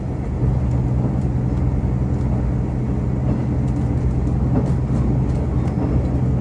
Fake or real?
real